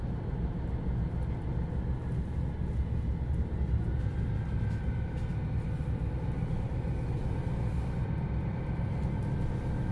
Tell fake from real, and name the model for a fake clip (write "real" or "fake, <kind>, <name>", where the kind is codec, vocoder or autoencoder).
real